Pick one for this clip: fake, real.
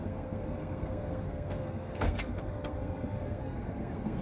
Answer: fake